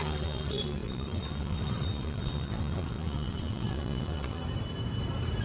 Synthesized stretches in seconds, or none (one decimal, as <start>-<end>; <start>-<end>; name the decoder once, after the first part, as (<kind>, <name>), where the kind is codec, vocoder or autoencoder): 0.0-4.4 (vocoder, WaveNeXt)